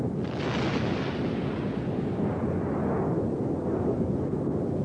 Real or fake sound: real